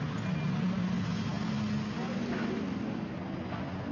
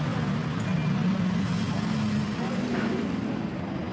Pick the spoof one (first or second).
second